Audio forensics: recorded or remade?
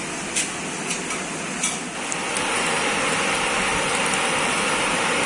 recorded